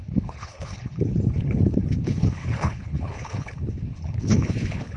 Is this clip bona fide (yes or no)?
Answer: no